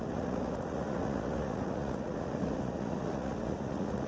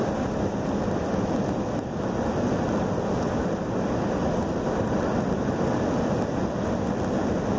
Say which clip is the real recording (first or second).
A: second